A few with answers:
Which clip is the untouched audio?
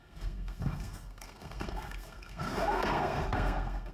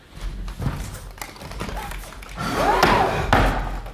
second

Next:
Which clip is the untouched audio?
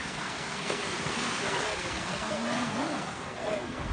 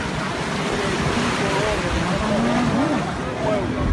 second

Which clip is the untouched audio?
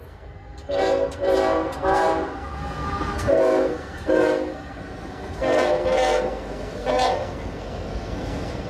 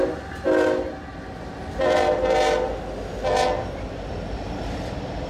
second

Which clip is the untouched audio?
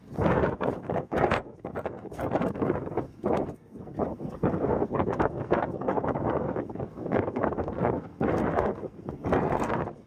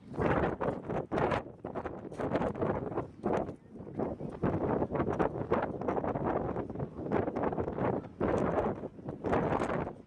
second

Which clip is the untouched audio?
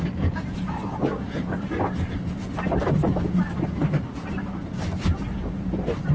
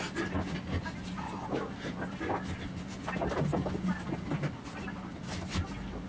second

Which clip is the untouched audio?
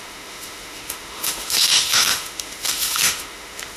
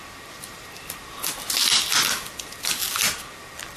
second